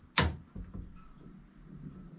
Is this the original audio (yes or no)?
yes